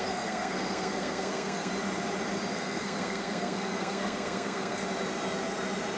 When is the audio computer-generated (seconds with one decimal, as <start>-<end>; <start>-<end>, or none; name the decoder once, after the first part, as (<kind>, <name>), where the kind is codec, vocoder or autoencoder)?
0.0-1.7 (codec, SNAC); 2.5-4.8